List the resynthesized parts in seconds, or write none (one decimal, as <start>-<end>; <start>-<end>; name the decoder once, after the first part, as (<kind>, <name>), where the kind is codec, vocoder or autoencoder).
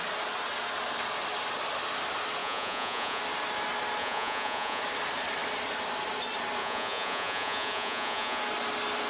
2.4-3.2 (vocoder, Vocos); 4.0-4.8; 6.6-8.4